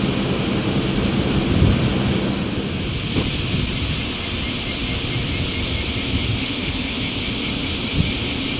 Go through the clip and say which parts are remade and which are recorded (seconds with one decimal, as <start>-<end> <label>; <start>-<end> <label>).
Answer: 0.0-6.4 recorded; 6.4-7.0 remade; 7.0-8.6 recorded